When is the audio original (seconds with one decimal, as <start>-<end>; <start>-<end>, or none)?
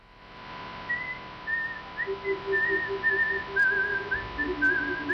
0.0-3.9